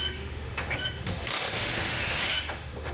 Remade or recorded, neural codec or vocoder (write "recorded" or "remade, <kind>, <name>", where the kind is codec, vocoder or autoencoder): remade, autoencoder, DAC-VAE